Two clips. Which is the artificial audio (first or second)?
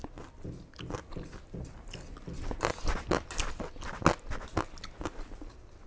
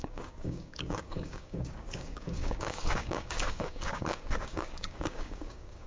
second